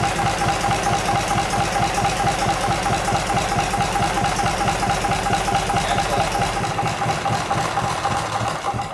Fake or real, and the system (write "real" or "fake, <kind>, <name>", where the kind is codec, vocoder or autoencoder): real